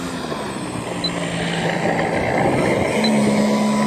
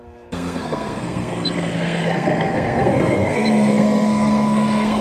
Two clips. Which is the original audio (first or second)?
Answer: first